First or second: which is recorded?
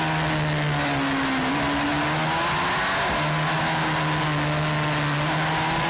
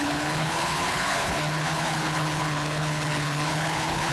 first